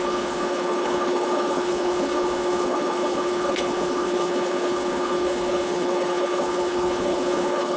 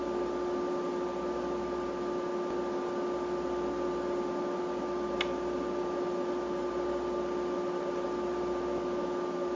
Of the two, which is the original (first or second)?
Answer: second